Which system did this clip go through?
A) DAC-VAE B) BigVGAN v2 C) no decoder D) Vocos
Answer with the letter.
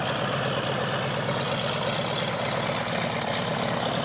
C